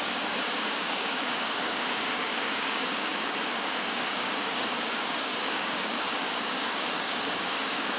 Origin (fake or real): fake